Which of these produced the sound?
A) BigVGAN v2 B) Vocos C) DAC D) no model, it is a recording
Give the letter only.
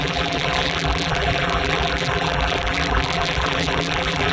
A